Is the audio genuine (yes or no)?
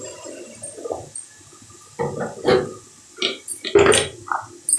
yes